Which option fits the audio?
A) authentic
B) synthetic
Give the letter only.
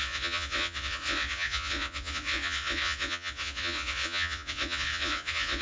B